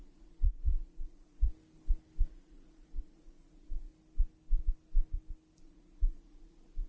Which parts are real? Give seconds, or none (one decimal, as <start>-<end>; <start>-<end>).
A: 1.5-2.3; 3.9-5.6